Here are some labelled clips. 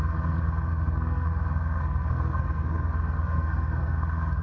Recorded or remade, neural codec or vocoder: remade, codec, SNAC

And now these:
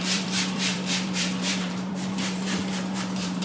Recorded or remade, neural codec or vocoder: remade, vocoder, BigVGAN v2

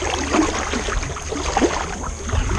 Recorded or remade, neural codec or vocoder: recorded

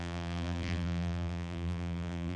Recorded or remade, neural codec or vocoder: remade, vocoder, BigVGAN v2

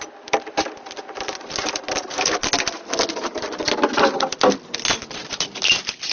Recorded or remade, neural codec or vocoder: recorded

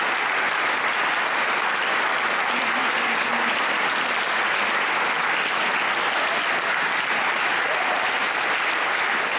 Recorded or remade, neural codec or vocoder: recorded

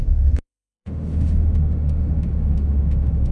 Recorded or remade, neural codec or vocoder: remade, autoencoder, DAC-VAE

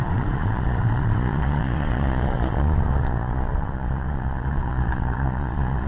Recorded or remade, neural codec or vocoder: remade, vocoder, Vocos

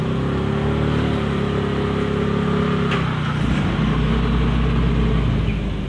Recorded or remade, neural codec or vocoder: recorded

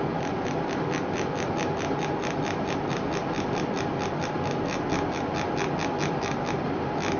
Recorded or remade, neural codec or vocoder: recorded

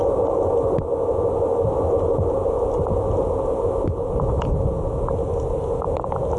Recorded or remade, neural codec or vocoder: recorded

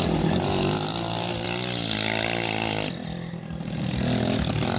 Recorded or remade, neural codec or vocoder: recorded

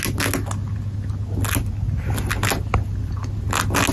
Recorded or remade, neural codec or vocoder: recorded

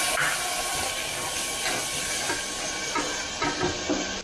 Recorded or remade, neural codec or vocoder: recorded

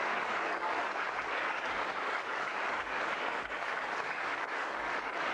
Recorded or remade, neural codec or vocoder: remade, codec, DAC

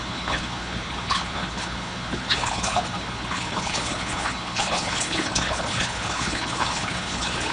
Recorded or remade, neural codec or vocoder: remade, codec, HILCodec